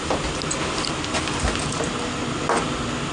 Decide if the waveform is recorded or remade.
recorded